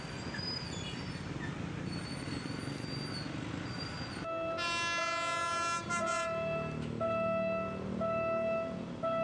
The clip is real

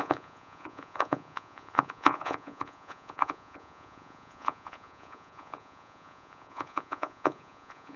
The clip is fake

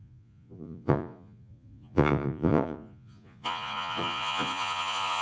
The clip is fake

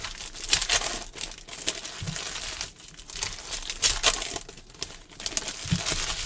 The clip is real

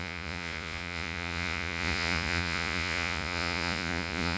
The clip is fake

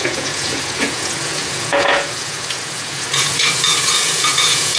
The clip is fake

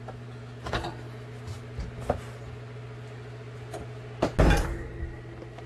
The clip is real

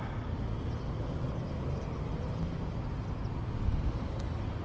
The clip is real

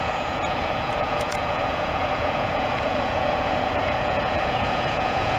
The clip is fake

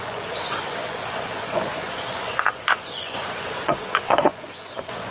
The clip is fake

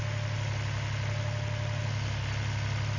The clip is real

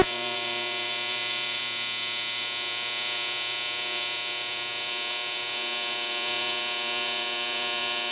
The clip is fake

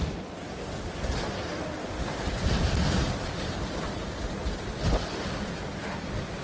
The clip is real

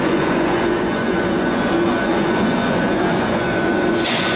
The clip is fake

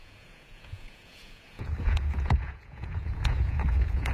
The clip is fake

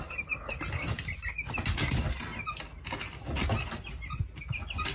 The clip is real